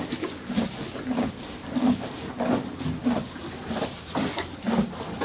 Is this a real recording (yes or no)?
yes